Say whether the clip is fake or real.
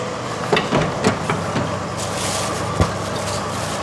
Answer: real